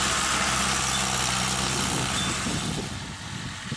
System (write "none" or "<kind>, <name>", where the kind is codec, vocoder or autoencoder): none